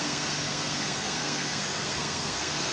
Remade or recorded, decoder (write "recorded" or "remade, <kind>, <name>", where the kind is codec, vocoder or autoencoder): remade, codec, SNAC